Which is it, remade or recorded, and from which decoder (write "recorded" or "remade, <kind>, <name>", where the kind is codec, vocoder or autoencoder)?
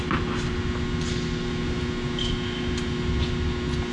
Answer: recorded